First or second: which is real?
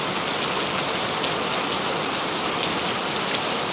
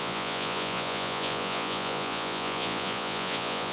first